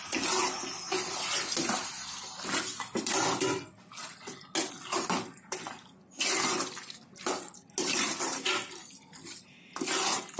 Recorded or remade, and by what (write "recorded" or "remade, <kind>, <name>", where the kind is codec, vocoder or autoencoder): recorded